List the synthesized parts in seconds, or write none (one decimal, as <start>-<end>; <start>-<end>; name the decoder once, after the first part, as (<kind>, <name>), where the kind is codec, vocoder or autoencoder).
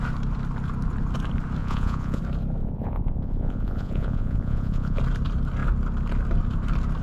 1.6-2.2 (vocoder, Vocos); 2.6-5.0